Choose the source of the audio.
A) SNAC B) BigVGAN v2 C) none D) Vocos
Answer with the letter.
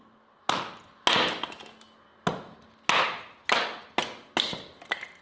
C